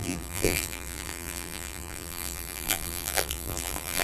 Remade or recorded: remade